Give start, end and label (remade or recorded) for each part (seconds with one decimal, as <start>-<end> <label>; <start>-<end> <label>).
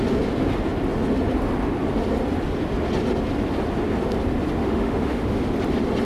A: 0.0-4.6 recorded; 4.6-5.4 remade; 5.4-6.0 recorded